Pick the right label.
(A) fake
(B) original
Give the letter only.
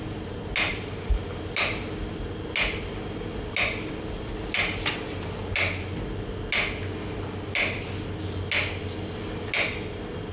B